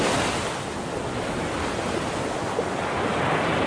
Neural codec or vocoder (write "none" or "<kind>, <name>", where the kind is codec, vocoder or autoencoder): none